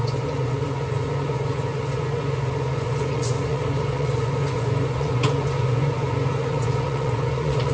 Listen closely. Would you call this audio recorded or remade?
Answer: remade